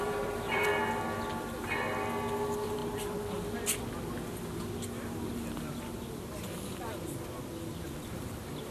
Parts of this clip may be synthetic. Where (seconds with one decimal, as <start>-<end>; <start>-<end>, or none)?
0.0-0.7; 2.4-2.8; 8.0-8.7